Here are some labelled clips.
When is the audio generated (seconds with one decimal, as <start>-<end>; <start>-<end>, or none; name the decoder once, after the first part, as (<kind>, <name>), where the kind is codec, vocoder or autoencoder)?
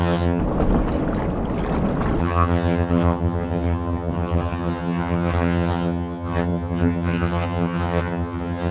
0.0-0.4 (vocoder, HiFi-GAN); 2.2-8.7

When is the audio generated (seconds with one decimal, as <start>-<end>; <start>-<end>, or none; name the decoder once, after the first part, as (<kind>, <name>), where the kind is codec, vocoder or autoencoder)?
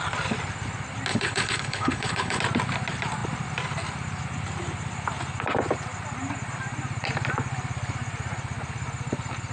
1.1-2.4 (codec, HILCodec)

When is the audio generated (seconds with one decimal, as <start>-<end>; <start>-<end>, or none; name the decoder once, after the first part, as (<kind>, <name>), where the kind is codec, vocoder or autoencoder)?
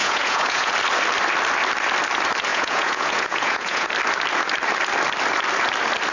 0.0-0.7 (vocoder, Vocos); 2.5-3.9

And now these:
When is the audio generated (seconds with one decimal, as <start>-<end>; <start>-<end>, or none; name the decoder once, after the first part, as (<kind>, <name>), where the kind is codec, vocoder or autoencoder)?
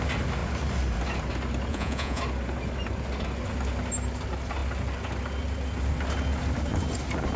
1.7-2.2 (vocoder, Vocos)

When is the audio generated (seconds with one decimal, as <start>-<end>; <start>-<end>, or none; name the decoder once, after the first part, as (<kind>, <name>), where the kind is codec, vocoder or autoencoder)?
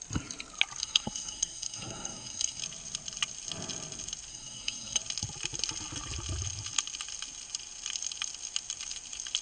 0.8-2.6 (codec, SNAC); 4.3-5.0